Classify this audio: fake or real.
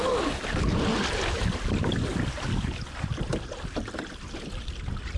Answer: real